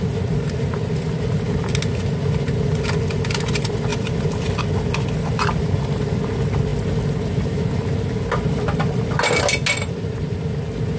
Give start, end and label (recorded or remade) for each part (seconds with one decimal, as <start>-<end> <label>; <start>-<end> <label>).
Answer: 0.0-11.0 recorded